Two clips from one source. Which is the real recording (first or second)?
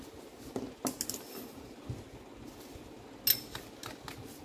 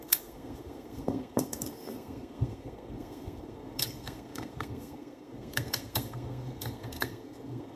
first